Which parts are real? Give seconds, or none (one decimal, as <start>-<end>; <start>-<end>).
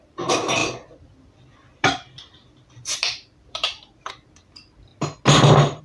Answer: 0.0-0.6; 4.1-5.8